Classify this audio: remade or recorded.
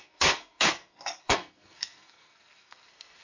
remade